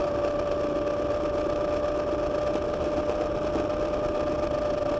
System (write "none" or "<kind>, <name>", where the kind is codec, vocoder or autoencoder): none